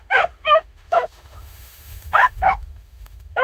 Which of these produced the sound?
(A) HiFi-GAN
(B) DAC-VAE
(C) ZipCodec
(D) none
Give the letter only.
B